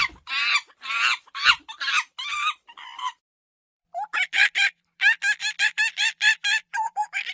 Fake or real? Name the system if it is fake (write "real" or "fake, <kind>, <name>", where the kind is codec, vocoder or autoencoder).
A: fake, vocoder, BigVGAN v2